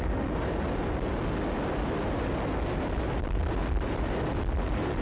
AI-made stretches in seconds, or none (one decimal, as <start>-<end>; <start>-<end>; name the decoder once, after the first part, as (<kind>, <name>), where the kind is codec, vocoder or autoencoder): 3.4-4.3 (vocoder, BigVGAN v2)